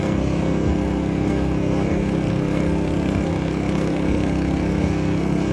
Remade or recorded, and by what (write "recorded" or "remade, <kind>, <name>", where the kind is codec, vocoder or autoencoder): remade, codec, SNAC